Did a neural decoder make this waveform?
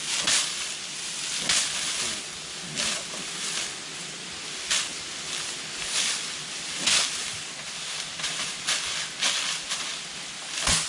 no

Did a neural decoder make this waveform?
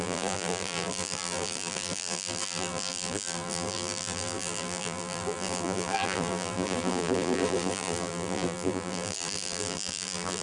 yes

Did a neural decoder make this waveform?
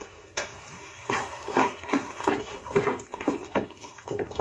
yes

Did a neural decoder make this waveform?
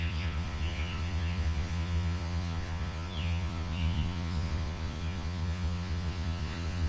yes